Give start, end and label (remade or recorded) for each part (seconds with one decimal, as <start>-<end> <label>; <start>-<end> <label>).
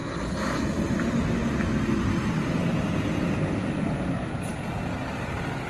0.0-5.7 recorded